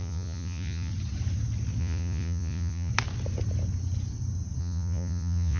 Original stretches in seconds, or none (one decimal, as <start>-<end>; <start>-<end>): 0.9-1.8; 2.9-4.6